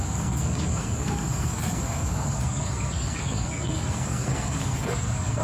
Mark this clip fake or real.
fake